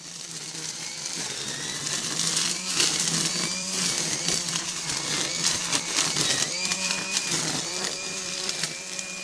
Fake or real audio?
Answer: fake